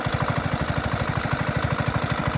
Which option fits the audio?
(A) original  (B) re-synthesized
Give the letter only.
B